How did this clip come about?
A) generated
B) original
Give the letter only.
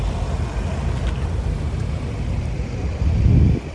B